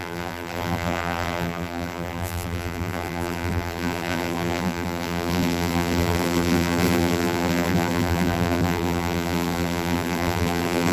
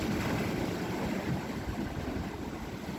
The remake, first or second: first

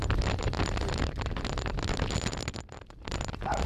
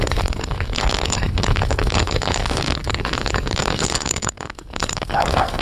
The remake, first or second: second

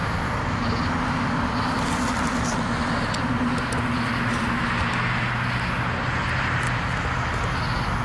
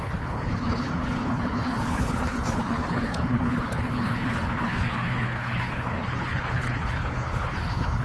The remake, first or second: second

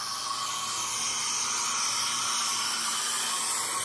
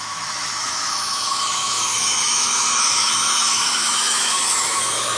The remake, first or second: second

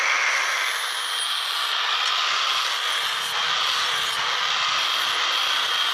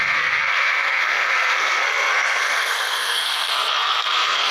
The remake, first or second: second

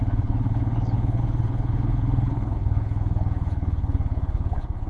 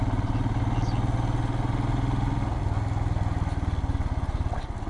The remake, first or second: first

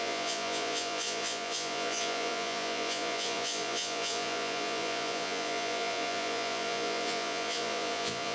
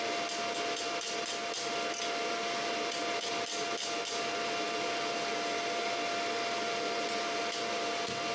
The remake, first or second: first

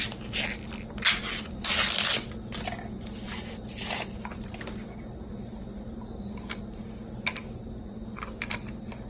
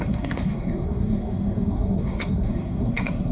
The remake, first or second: second